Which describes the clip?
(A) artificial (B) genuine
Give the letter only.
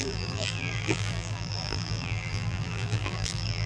A